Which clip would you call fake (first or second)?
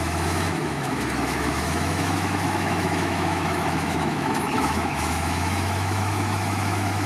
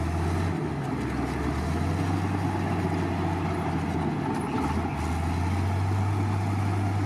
first